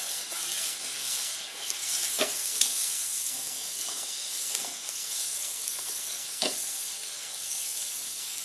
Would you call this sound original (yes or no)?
no